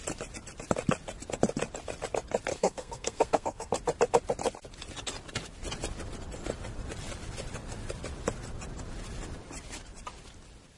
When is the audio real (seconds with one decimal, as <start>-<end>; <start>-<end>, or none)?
0.0-2.5; 3.7-10.8